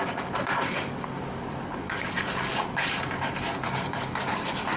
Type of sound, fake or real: fake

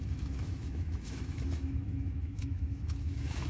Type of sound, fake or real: fake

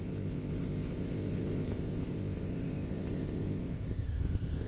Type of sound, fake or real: fake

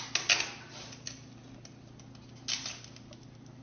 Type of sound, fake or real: real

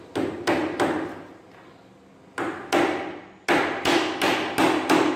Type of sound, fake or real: real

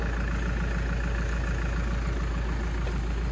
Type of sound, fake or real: real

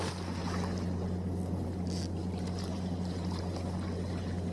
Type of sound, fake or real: real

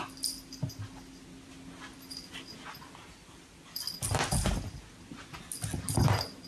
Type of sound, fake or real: real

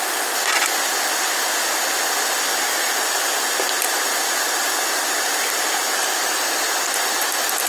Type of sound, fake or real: real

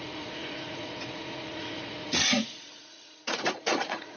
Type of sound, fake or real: fake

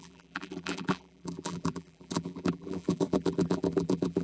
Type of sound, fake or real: fake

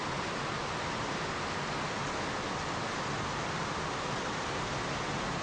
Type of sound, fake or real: real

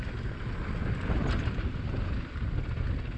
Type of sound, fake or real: real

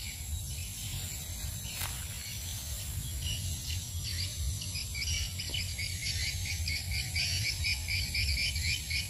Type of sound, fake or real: real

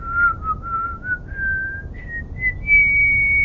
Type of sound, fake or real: real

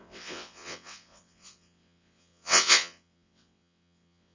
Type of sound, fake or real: fake